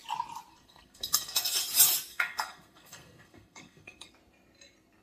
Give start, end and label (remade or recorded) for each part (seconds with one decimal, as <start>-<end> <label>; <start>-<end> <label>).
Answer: 0.0-0.5 recorded; 0.5-1.6 remade; 1.6-2.1 recorded; 2.1-4.1 remade; 4.1-5.0 recorded